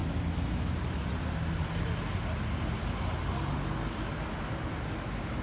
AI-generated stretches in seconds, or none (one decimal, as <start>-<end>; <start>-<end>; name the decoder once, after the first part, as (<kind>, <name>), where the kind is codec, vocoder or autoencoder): none